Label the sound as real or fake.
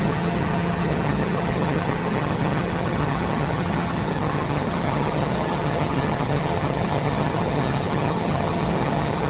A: fake